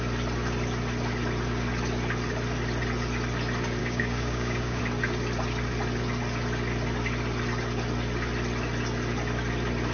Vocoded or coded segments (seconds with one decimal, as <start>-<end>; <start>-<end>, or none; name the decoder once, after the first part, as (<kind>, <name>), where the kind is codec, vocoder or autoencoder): 3.8-4.8 (codec, DAC)